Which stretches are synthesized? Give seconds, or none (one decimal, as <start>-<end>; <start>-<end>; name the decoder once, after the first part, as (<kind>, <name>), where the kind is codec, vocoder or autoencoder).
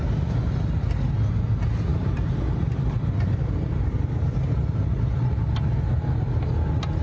1.9-5.4 (vocoder, BigVGAN v2)